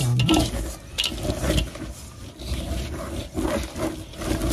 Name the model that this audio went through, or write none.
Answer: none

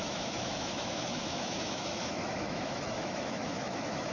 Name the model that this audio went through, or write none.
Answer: autoencoder, DAC-VAE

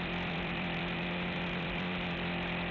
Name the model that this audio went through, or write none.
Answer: vocoder, BigVGAN v2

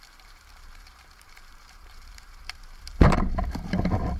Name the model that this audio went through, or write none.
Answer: vocoder, BigVGAN v2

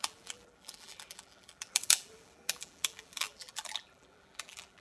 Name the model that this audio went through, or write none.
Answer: vocoder, BigVGAN v2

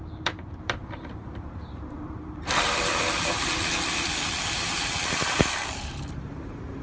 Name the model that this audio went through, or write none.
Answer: vocoder, BigVGAN v2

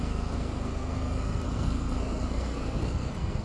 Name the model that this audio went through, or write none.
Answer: codec, SNAC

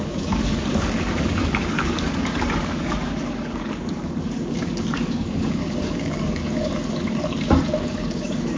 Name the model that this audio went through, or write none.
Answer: codec, DAC